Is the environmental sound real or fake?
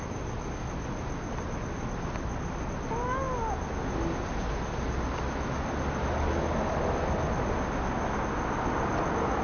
real